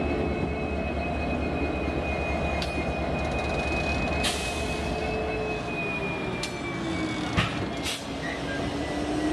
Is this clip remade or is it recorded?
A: recorded